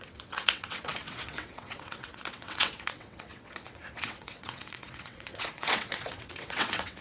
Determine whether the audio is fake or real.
fake